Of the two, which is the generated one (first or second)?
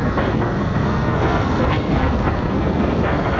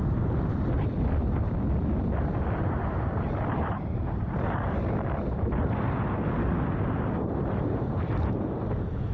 first